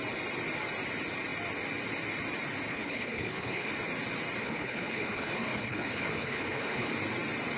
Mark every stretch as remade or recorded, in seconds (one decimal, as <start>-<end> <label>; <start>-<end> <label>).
0.0-2.7 recorded; 2.7-3.7 remade; 3.7-4.4 recorded; 4.4-6.9 remade; 6.9-7.6 recorded